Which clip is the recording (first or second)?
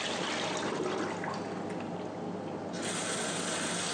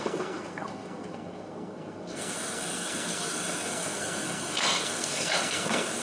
first